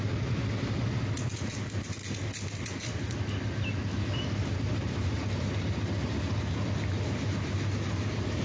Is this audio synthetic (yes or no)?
no